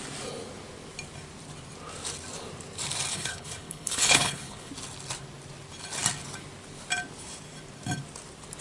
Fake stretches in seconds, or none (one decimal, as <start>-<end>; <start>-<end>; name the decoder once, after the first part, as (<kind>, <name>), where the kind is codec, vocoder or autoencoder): 3.1-4.7 (codec, HILCodec)